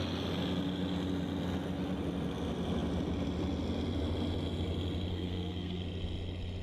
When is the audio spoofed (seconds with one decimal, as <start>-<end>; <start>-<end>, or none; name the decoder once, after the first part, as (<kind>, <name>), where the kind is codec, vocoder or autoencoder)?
5.1-5.8 (codec, SNAC)